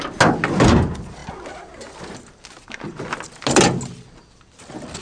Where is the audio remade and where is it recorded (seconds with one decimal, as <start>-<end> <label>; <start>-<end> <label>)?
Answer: 0.0-5.0 recorded